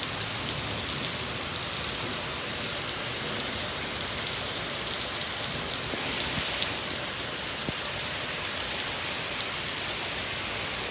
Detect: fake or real real